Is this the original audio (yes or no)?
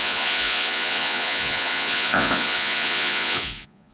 no